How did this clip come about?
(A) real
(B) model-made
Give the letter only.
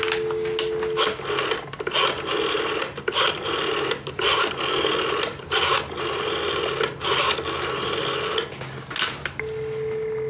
A